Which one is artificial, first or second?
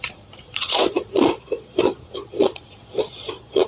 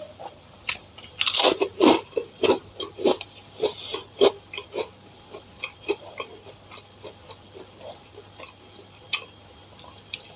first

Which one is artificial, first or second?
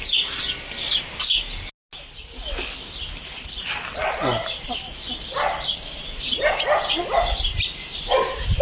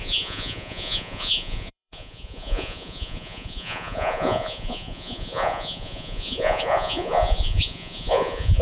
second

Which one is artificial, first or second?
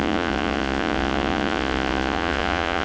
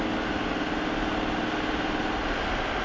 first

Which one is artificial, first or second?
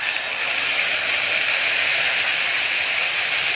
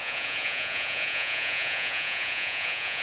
second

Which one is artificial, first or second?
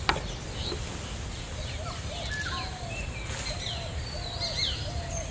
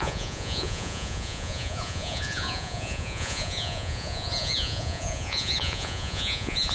second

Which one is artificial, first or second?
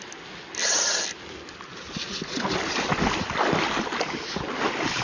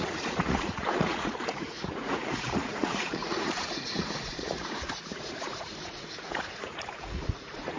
second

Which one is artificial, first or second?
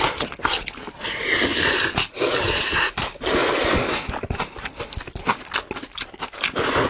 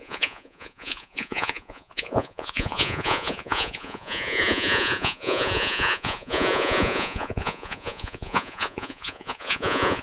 second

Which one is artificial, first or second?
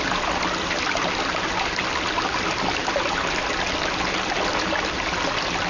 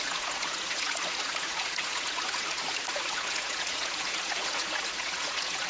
second